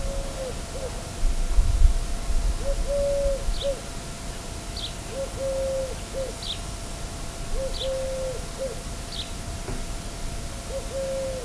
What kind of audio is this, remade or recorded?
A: recorded